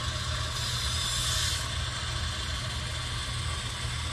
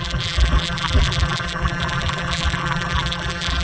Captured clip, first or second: first